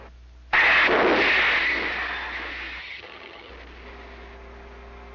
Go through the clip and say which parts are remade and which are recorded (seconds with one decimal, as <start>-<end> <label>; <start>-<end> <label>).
0.0-2.8 recorded; 2.8-3.5 remade; 3.5-5.1 recorded